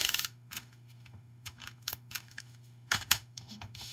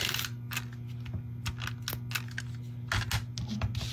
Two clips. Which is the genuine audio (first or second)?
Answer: second